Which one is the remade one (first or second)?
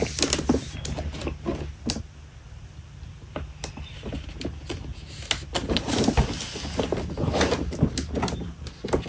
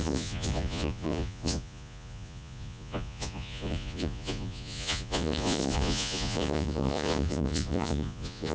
second